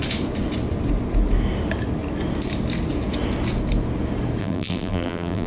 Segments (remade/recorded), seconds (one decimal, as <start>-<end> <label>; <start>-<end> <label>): 0.0-4.4 recorded; 4.4-5.5 remade